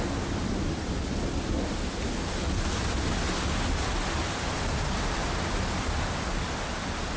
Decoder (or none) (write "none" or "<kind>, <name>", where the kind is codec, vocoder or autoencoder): none